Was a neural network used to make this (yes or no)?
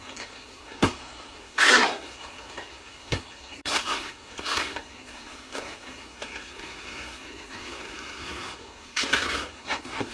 yes